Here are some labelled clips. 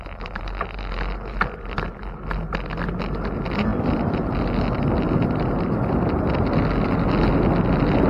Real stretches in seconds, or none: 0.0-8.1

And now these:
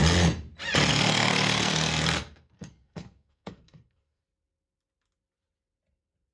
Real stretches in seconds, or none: 0.0-0.9; 4.2-6.3

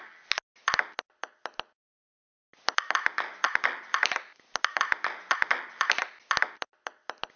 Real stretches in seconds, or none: 0.0-7.4

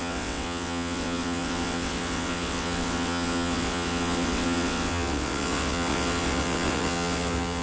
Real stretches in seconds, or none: none

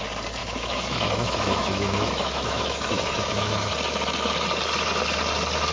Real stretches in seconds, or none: 0.0-0.4; 3.7-5.7

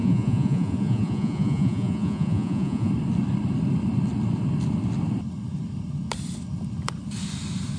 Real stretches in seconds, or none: 2.9-7.8

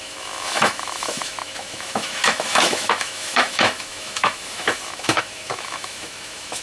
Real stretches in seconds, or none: none